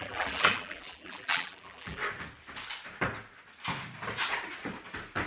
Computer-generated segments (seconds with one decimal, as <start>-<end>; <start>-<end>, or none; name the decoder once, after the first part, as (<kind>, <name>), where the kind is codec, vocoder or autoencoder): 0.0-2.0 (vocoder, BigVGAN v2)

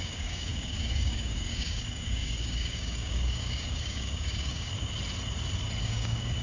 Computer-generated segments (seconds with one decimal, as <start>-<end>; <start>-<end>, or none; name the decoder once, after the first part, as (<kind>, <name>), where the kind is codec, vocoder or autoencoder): 0.0-4.7 (codec, DAC); 5.8-6.4

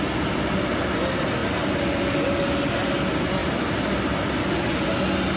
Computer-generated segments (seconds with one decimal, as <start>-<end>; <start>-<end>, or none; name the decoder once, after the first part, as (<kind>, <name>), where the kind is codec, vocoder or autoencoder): 3.4-4.3 (vocoder, BigVGAN v2)

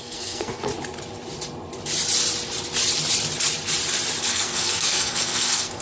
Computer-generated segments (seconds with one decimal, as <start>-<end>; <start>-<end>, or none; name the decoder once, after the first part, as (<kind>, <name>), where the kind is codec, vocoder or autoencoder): 0.0-0.7 (codec, SNAC); 4.2-5.8